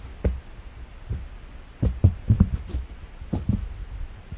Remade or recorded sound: recorded